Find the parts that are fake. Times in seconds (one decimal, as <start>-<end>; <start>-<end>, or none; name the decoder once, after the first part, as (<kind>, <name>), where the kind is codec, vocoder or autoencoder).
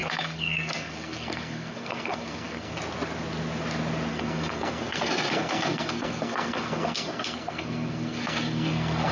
0.0-2.8 (codec, SNAC); 4.1-9.1